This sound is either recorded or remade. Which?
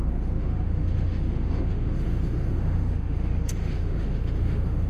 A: remade